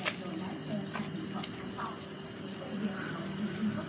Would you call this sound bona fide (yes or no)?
yes